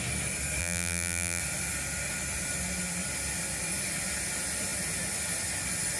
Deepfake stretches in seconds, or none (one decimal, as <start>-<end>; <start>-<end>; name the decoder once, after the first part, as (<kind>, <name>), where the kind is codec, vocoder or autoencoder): 0.6-1.4 (vocoder, BigVGAN v2)